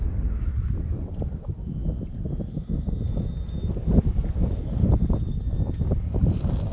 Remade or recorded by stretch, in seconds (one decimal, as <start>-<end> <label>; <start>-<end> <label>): 0.0-6.7 recorded